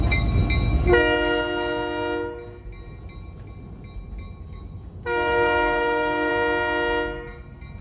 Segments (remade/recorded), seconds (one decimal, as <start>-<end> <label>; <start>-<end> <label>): 0.0-0.4 remade; 0.4-4.4 recorded; 4.4-6.3 remade; 6.3-7.8 recorded

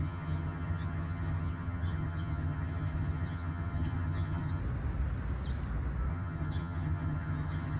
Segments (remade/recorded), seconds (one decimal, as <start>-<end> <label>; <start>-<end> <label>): 0.0-4.6 remade; 4.6-6.1 recorded; 6.1-7.8 remade

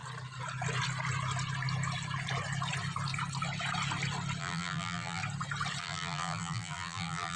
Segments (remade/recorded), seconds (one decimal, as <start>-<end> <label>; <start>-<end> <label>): 0.0-4.4 recorded; 4.4-5.2 remade; 5.2-5.8 recorded; 5.8-7.4 remade